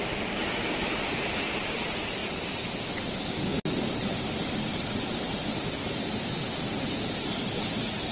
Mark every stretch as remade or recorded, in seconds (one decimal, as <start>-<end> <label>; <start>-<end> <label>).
0.0-2.2 remade; 2.2-5.3 recorded; 5.3-8.1 remade